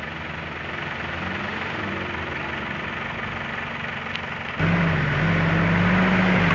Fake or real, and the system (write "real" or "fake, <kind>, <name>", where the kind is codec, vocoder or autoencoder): real